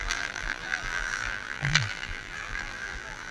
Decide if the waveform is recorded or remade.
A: remade